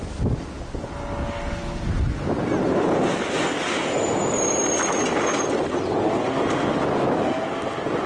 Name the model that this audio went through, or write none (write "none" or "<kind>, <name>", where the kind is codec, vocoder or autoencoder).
none